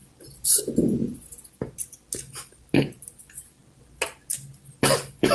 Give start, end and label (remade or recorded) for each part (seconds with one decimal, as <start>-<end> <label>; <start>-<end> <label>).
0.0-5.3 recorded